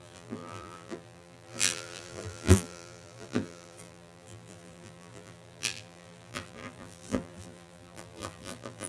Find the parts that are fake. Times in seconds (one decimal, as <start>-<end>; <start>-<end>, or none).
0.0-8.9